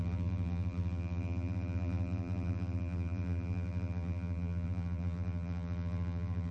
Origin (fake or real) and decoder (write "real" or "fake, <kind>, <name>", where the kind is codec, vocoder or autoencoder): fake, vocoder, BigVGAN v2